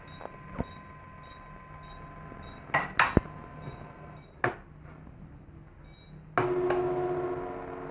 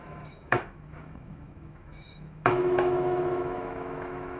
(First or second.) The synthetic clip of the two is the second